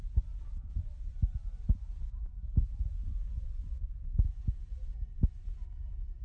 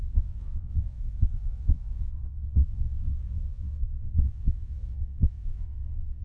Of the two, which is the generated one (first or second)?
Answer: second